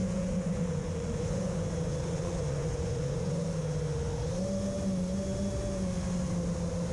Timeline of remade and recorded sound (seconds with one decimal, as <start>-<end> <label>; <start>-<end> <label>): 0.0-3.4 remade; 3.4-6.9 recorded